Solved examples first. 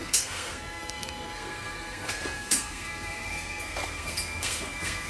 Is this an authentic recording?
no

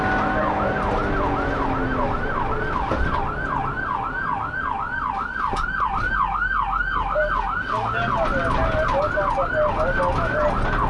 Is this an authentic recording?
yes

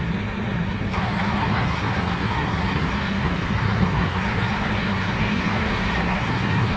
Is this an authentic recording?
no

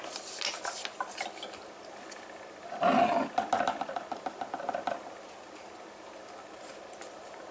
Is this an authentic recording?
yes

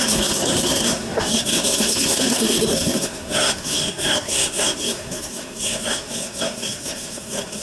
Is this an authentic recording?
no